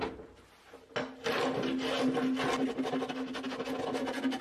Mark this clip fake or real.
real